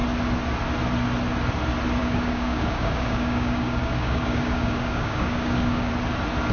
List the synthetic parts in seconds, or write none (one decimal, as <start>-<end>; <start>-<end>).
2.0-5.9